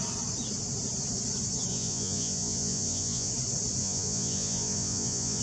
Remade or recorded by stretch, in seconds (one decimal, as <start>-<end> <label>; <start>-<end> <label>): 0.0-1.7 recorded; 1.7-3.3 remade; 3.3-3.8 recorded; 3.8-5.4 remade